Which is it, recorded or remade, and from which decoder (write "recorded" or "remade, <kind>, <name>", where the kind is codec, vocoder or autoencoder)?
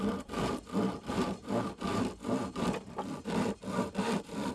remade, vocoder, BigVGAN v2